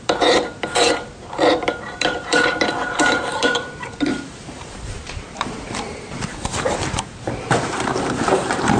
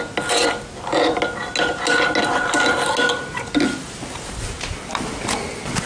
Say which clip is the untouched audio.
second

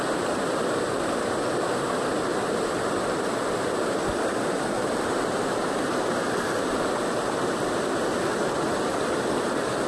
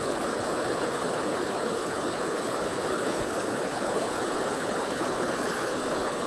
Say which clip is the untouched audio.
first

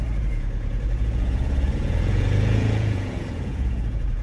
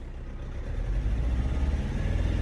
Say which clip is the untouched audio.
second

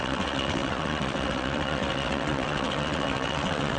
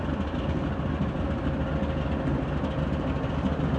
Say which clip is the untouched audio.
second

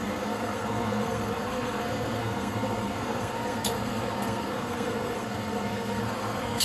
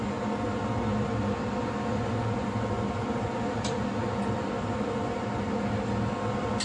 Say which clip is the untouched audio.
second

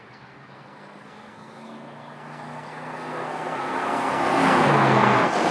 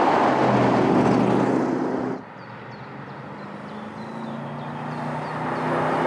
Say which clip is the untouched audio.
second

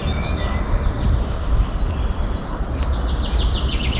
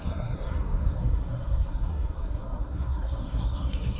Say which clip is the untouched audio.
first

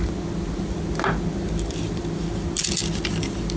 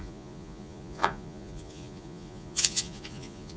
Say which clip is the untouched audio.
first